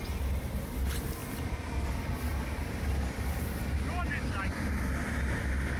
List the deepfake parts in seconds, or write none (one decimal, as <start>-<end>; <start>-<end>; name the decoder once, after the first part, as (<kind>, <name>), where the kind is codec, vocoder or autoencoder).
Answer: none